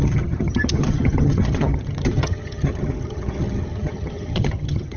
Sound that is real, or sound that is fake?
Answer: fake